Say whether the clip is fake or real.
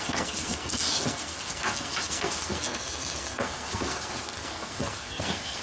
fake